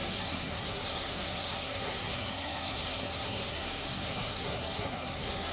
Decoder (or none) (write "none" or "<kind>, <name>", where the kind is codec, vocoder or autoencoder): codec, SNAC